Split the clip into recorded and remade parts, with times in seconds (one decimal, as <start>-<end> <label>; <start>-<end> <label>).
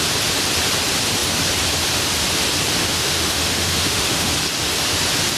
0.0-2.8 recorded; 2.8-4.3 remade; 4.3-5.4 recorded